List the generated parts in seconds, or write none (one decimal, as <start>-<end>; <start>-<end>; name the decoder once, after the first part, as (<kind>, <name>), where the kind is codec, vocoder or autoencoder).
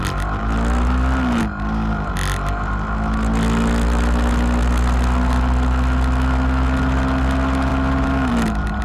none